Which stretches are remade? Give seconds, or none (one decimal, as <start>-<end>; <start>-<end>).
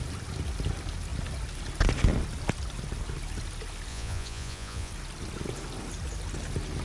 3.9-4.9